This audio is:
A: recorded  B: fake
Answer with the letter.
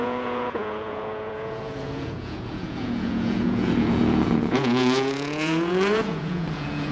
B